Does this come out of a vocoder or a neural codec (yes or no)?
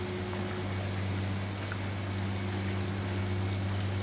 no